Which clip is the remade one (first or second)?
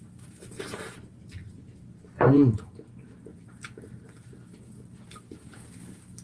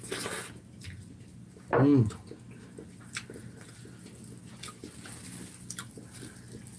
first